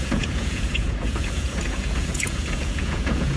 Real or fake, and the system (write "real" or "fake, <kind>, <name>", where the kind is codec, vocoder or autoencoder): fake, vocoder, Vocos